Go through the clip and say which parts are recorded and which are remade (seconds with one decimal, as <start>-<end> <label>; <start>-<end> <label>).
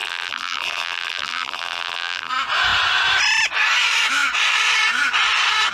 0.0-2.3 remade; 2.3-5.7 recorded